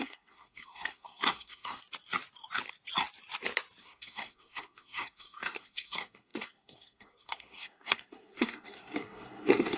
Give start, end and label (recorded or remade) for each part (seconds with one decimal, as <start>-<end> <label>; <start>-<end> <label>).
0.0-1.8 remade; 1.8-3.8 recorded; 3.8-9.8 remade